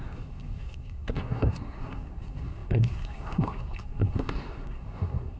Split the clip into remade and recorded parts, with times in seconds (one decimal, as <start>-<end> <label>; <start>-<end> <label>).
0.0-5.4 remade